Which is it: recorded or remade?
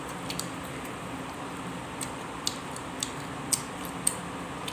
recorded